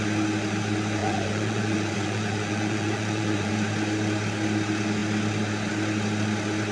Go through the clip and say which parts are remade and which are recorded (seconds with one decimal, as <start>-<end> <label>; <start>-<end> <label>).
0.0-1.0 recorded; 1.0-3.5 remade; 3.5-6.7 recorded